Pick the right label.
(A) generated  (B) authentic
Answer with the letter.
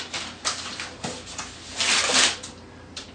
B